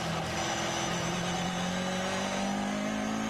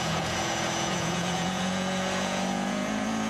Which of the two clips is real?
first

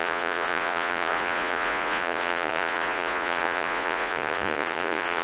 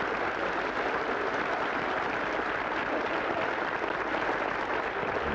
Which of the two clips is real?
second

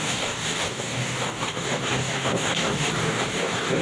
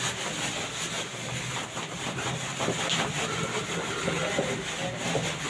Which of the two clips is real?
second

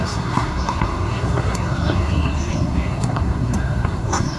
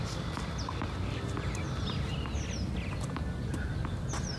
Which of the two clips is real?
second